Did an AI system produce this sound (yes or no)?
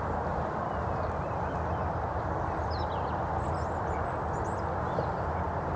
no